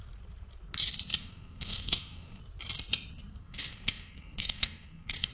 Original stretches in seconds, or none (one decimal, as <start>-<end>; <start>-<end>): 0.0-1.2; 2.4-3.4